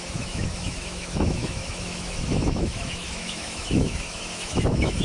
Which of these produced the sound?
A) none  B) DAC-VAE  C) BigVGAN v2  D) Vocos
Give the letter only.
B